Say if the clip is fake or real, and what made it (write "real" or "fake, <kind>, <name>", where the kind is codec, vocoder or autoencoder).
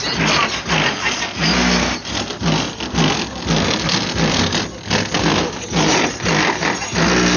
real